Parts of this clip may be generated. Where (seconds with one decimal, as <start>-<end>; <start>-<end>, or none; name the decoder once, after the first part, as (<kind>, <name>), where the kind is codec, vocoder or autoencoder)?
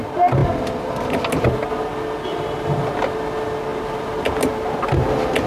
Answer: 2.3-2.9 (vocoder, BigVGAN v2)